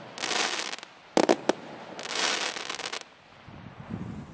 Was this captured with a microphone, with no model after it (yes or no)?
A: yes